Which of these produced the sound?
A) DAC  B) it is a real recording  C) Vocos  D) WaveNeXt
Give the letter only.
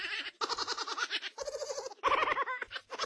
B